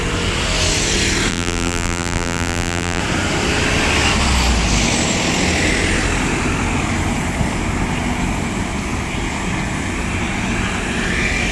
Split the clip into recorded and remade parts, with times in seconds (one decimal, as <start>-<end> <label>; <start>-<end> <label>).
0.0-1.3 recorded; 1.3-3.0 remade; 3.0-11.5 recorded

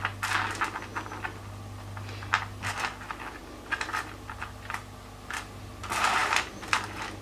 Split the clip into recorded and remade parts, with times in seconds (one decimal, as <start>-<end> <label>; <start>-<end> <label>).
0.0-6.2 recorded; 6.2-6.7 remade; 6.7-7.2 recorded

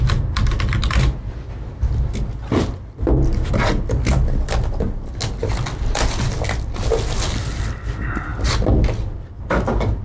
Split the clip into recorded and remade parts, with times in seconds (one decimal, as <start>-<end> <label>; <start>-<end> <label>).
0.0-10.0 recorded

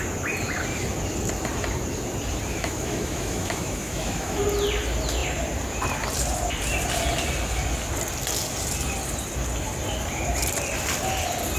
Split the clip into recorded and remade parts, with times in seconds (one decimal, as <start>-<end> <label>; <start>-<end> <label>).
0.0-2.5 recorded; 2.5-4.4 remade; 4.4-11.6 recorded

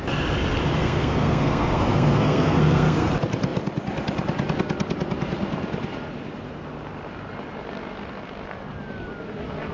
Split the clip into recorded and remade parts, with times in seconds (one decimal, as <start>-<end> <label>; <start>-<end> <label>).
0.0-0.8 recorded; 0.8-3.1 remade; 3.1-9.7 recorded